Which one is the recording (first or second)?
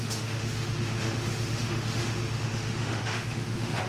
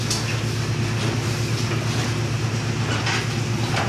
second